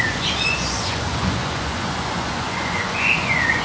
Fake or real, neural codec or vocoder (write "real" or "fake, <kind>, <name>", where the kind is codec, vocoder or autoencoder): fake, vocoder, Vocos